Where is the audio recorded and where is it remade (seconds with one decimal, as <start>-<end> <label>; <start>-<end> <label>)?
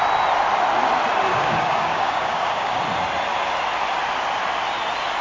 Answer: 0.0-1.3 recorded; 1.3-2.8 remade; 2.8-5.2 recorded